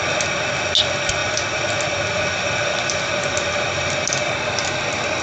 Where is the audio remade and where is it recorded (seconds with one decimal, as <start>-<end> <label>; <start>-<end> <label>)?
0.0-1.2 recorded; 1.2-4.3 remade; 4.3-5.2 recorded